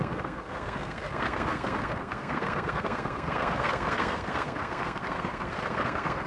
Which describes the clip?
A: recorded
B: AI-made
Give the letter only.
B